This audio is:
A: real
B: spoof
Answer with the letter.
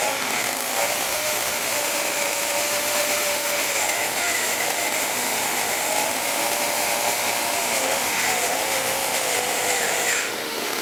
B